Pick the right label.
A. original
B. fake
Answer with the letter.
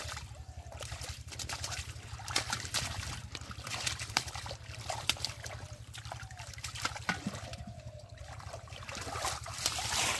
B